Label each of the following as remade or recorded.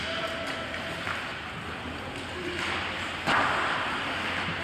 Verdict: recorded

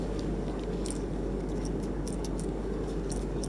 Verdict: remade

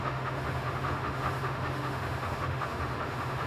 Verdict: remade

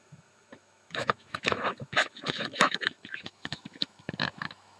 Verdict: remade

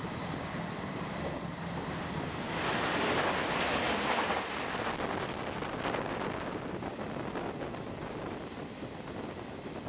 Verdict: recorded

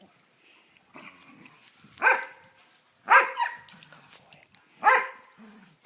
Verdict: recorded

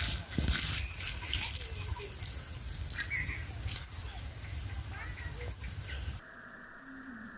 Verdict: recorded